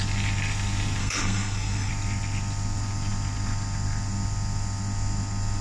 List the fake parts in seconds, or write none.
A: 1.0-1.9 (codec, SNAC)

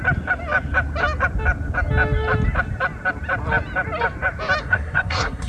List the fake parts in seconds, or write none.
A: 4.6-5.5 (codec, SNAC)

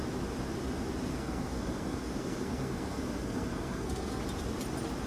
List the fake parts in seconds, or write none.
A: 1.1-4.2 (codec, SNAC)

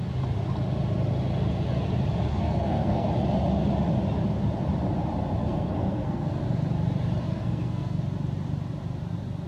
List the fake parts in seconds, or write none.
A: 2.3-3.1 (codec, SNAC); 5.4-6.4; 7.3-8.0

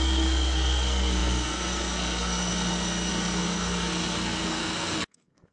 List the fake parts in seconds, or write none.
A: 0.0-5.5 (codec, SNAC)

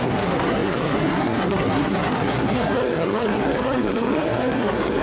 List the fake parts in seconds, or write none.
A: 0.0-5.0 (codec, SNAC)

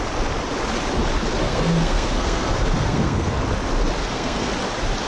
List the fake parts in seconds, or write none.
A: 1.4-3.4 (codec, SNAC); 4.0-4.5

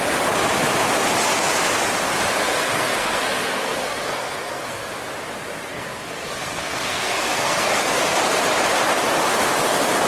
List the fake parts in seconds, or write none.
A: 2.4-4.9 (codec, SNAC); 5.7-8.0